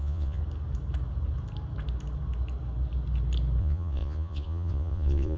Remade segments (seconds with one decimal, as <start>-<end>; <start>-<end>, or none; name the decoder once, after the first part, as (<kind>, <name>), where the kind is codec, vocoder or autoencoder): 0.0-0.4 (vocoder, Vocos); 3.6-5.4